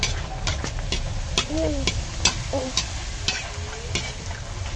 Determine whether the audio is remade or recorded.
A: recorded